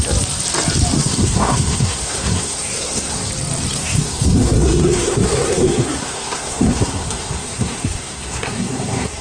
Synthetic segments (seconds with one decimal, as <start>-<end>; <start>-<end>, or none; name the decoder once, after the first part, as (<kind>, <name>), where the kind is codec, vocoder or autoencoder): 1.0-3.3 (codec, SNAC); 3.8-9.2